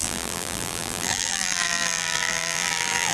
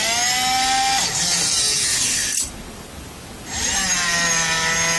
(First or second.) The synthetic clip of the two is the first